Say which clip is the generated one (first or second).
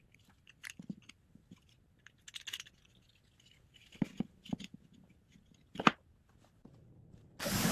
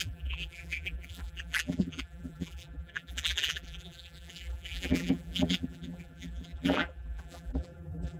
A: second